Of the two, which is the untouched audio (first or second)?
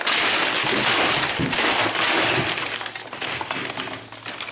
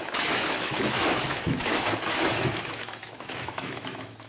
first